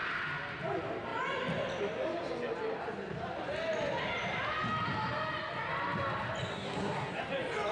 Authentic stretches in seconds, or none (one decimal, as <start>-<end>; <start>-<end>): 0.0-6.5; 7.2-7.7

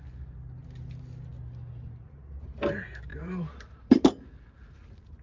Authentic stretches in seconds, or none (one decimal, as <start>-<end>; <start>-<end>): 0.0-3.1; 3.9-5.2

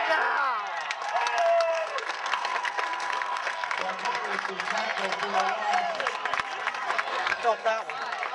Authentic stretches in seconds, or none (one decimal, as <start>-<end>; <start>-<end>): 0.0-1.7; 4.5-7.1; 7.7-8.3

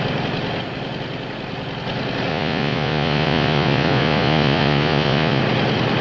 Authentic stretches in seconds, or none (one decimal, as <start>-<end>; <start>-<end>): 0.0-2.3; 5.4-6.0